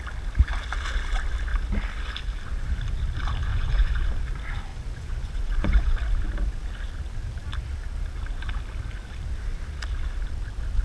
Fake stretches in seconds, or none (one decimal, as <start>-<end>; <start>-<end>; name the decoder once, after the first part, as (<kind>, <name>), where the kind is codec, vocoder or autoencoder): 3.5-4.1 (vocoder, Vocos); 4.7-6.0